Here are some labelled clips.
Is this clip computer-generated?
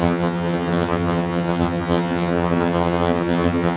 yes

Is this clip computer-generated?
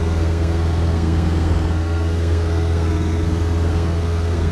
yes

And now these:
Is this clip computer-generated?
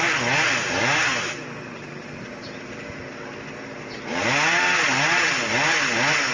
no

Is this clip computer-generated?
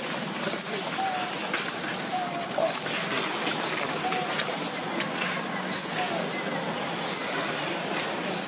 no